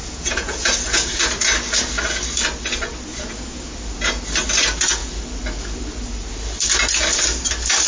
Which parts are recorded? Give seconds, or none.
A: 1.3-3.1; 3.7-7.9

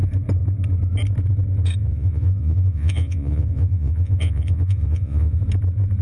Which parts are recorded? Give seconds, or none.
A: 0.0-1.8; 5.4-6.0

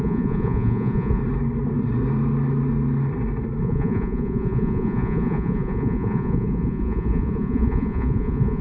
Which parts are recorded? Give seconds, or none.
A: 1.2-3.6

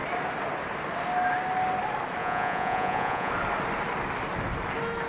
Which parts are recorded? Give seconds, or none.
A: 0.0-2.2; 3.3-5.1

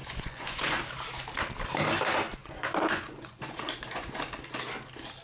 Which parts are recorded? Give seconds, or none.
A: 0.8-2.4; 4.2-5.2